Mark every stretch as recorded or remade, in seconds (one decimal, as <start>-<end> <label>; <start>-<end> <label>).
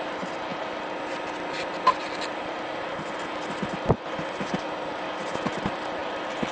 0.0-6.5 recorded